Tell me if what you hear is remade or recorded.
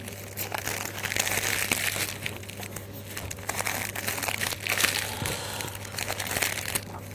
recorded